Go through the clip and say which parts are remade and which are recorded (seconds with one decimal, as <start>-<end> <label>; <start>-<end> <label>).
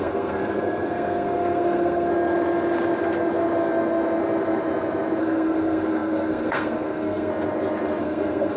0.0-2.1 remade; 2.1-5.2 recorded; 5.2-7.3 remade; 7.3-8.0 recorded; 8.0-8.6 remade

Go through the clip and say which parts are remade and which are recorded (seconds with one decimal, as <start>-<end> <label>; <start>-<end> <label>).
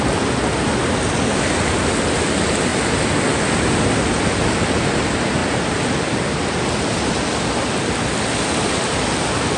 0.0-2.7 recorded; 2.7-3.2 remade; 3.2-9.6 recorded